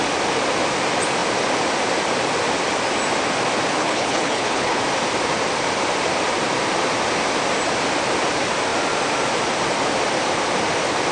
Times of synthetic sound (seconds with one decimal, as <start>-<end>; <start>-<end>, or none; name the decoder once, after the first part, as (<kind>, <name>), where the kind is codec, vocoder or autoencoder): 3.8-4.8 (codec, HILCodec)